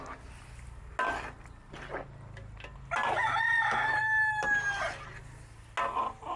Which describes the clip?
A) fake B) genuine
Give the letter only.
B